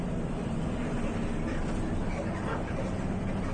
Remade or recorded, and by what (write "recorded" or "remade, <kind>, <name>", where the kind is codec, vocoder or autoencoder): recorded